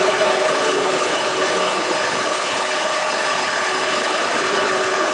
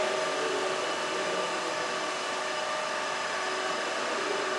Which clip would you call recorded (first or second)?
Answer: second